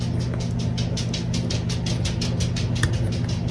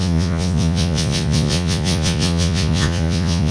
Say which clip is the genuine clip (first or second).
first